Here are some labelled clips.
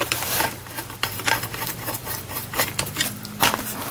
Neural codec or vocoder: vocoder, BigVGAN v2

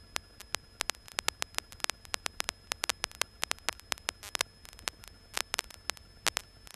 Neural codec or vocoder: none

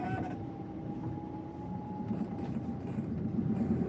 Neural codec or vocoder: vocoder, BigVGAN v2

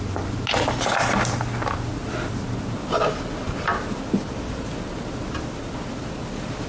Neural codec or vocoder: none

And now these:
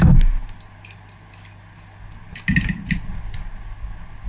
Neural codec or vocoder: none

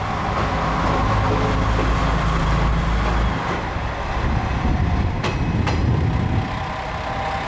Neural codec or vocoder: none